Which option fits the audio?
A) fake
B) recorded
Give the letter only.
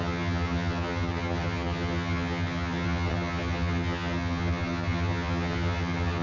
A